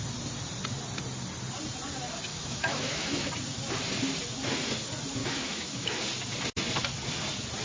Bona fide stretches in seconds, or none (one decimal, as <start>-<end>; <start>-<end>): 0.0-2.3; 3.3-5.2; 6.0-7.6